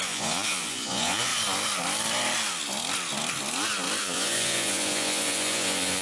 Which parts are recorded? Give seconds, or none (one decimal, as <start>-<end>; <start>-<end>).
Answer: 1.3-4.0